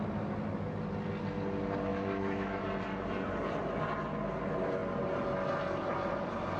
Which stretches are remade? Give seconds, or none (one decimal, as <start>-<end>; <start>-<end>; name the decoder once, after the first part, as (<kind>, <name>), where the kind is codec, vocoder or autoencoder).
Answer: 1.9-2.6 (autoencoder, DAC-VAE)